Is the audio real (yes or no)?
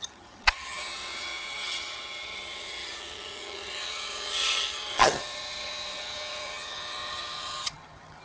no